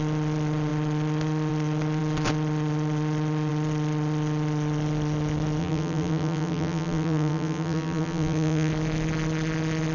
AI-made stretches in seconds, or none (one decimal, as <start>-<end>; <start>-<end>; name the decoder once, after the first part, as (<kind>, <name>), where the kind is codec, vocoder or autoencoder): 5.6-8.7 (vocoder, BigVGAN v2)